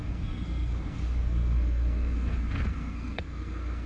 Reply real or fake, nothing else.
fake